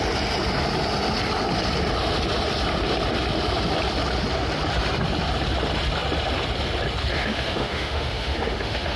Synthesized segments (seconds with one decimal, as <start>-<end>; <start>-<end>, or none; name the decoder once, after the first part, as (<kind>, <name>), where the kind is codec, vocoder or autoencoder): 7.1-9.0 (autoencoder, DAC-VAE)